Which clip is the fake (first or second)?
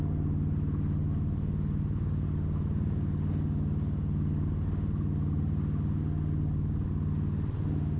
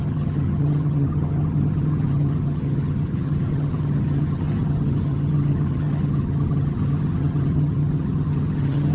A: second